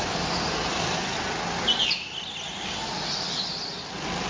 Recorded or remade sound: recorded